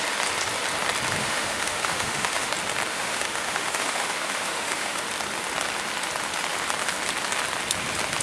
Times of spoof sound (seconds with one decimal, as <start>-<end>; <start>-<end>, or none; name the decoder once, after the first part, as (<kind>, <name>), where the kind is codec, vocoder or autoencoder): 1.2-2.5 (autoencoder, DAC-VAE); 2.9-5.0